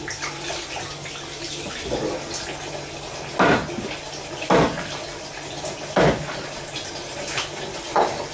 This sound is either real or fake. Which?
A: real